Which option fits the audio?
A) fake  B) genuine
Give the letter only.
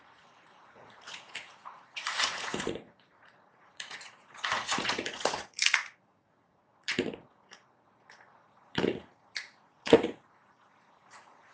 A